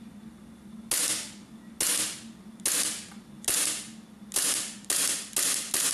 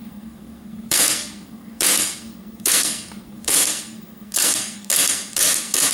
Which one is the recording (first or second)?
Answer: first